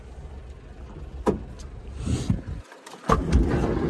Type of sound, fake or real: real